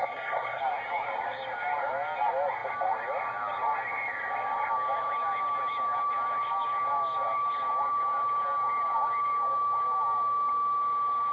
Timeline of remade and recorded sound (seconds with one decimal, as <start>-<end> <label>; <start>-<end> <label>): 0.0-0.6 remade; 0.6-11.3 recorded